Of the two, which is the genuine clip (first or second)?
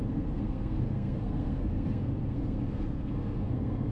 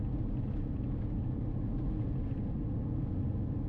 second